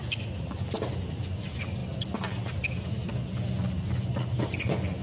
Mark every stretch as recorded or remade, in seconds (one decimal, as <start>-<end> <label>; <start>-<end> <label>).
0.0-5.0 recorded